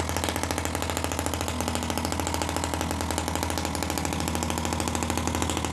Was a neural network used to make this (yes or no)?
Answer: no